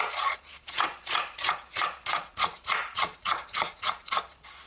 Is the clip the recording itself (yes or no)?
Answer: no